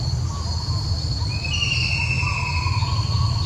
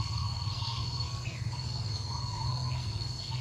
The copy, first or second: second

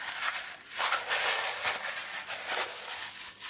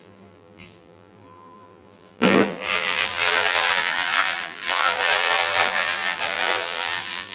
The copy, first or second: second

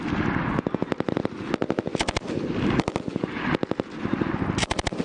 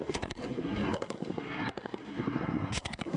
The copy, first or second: second